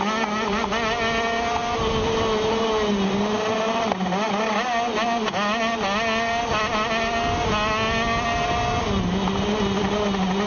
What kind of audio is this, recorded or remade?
recorded